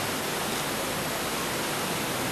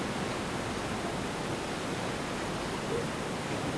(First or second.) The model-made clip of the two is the second